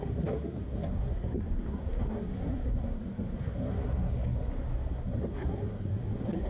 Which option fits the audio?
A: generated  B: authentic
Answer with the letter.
A